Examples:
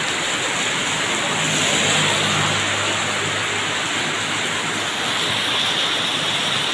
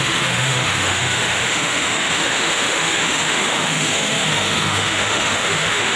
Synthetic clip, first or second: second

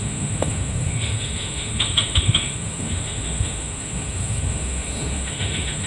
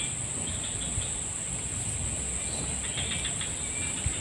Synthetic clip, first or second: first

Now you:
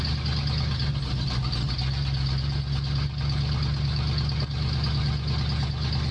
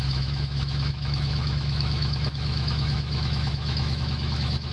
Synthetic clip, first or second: second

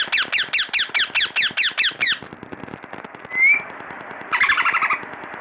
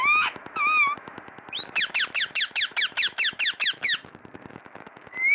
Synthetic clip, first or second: second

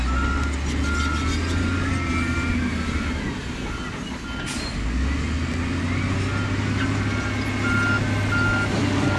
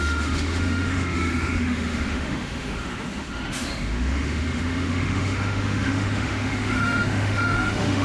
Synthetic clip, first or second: second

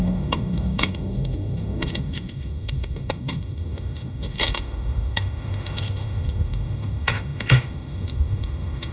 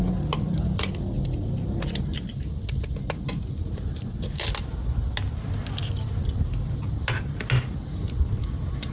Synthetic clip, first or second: first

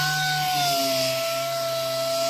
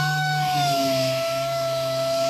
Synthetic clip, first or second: second